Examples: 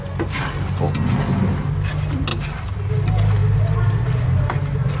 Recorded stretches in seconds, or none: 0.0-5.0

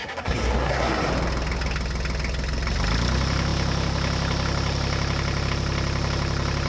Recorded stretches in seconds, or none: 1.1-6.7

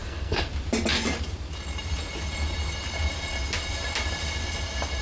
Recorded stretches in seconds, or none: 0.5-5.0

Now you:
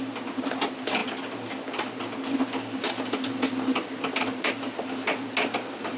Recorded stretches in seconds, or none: 0.0-6.0

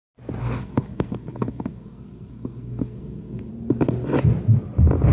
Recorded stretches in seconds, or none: 0.0-0.4; 3.5-5.1

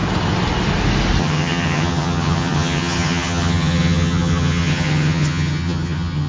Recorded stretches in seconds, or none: 0.0-1.2

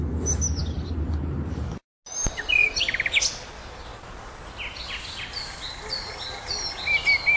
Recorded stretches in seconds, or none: 0.0-0.6; 1.7-7.4

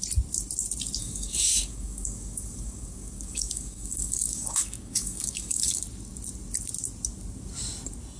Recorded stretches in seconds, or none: 0.0-1.0; 5.8-8.2